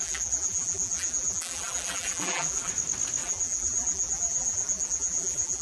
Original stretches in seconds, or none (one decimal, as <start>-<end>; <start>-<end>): 2.7-3.2